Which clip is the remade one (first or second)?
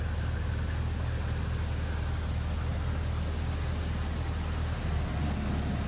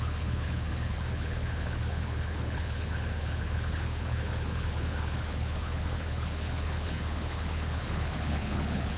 second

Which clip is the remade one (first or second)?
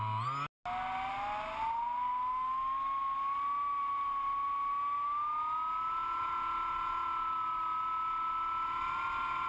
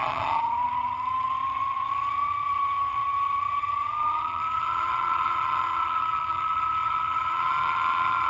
second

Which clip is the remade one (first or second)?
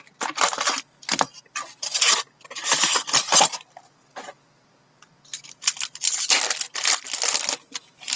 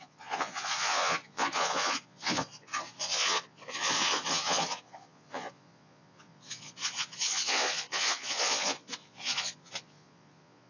second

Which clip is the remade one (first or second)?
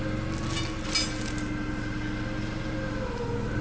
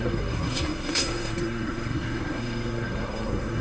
second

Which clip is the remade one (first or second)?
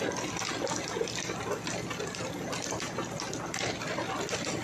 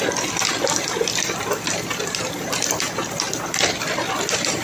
second